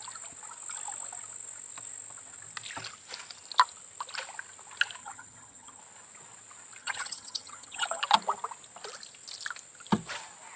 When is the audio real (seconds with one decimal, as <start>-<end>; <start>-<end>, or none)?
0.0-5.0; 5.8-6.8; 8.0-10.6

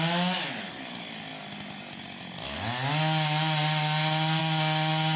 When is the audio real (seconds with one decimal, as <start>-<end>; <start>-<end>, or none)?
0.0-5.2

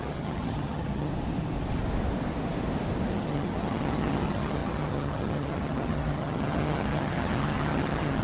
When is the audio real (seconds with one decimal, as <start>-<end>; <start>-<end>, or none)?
1.1-3.1

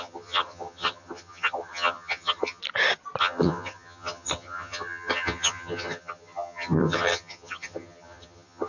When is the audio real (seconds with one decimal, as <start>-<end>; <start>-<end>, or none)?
2.6-3.2

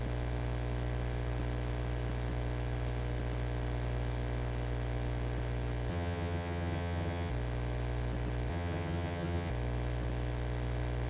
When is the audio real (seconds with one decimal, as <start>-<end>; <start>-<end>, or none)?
0.0-5.9; 7.3-8.5; 9.5-11.1

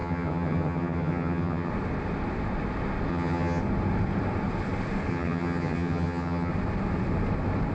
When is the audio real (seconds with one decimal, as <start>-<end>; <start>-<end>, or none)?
1.7-3.1; 3.6-5.1; 6.5-7.7

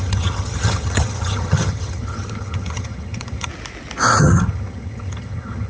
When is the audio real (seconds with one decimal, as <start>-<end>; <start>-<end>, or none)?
3.5-4.2